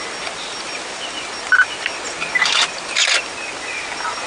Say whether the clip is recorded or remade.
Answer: recorded